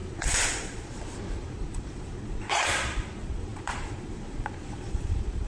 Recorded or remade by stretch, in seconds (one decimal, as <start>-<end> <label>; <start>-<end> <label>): 0.0-5.5 remade